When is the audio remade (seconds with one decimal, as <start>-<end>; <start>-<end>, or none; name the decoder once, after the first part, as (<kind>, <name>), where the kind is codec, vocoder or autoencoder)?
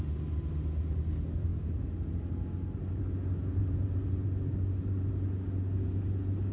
none